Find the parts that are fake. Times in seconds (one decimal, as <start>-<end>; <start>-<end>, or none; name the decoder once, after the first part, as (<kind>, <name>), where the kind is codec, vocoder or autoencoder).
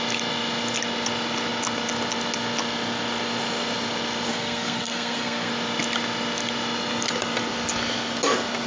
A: 4.3-5.5 (codec, SNAC)